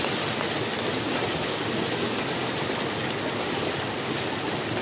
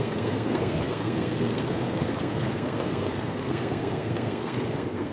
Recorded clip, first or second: first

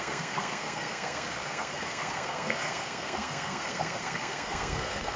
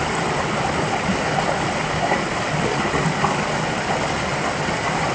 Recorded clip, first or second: second